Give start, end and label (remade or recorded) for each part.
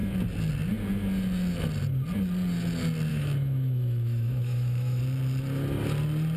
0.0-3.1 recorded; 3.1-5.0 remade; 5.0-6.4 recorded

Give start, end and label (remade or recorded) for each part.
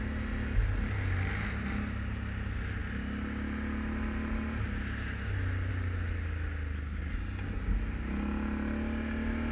0.0-9.5 recorded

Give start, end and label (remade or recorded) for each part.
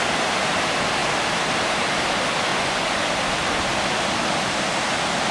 0.0-2.5 recorded; 2.5-3.1 remade; 3.1-5.3 recorded